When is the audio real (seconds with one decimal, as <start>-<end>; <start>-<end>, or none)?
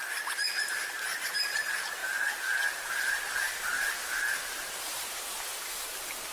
0.0-6.3